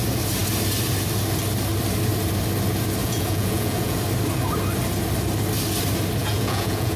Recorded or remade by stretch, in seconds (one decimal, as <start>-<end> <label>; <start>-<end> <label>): 0.0-3.0 recorded; 3.0-4.0 remade; 4.0-6.2 recorded; 6.2-7.0 remade